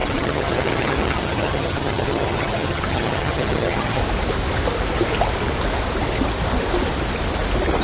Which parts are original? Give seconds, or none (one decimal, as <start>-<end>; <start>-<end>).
4.0-7.8